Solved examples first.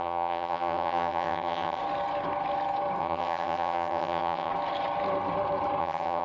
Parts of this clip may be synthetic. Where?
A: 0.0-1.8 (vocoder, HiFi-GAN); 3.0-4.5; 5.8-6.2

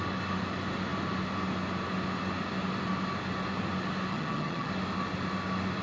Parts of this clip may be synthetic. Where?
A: 4.1-4.7 (vocoder, HiFi-GAN)

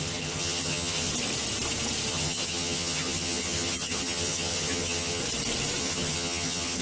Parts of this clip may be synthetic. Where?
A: 0.0-1.1 (vocoder, HiFi-GAN); 2.1-5.2; 5.8-6.8

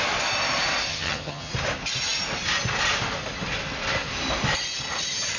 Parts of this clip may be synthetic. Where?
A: 0.9-1.5 (vocoder, HiFi-GAN)

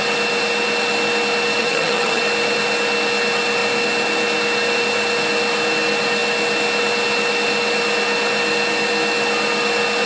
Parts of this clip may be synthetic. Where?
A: 1.6-2.2 (vocoder, HiFi-GAN)

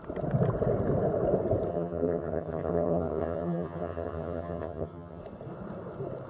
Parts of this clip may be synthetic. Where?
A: 1.7-5.2 (vocoder, HiFi-GAN)

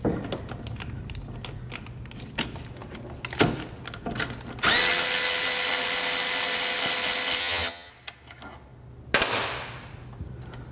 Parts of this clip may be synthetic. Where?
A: 7.4-7.9 (vocoder, HiFi-GAN)